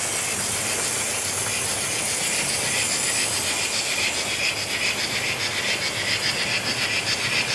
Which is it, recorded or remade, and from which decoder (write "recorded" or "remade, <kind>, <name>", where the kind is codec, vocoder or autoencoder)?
recorded